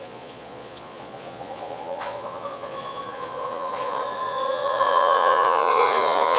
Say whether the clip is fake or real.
fake